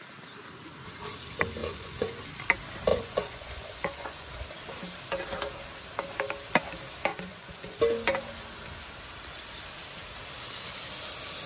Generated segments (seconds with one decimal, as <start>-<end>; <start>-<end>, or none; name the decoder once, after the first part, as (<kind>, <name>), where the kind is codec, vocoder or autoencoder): 1.6-2.2 (vocoder, Vocos); 2.9-4.3; 7.1-7.8